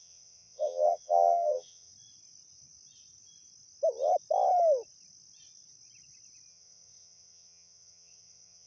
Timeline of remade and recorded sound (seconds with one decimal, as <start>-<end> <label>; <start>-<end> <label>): 0.0-1.9 remade; 1.9-6.5 recorded; 6.5-8.7 remade